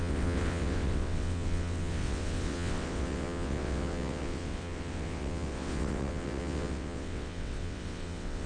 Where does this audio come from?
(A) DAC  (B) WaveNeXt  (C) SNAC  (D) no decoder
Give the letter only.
B